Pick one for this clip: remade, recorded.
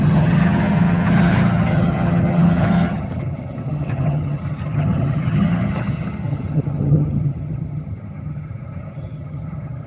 remade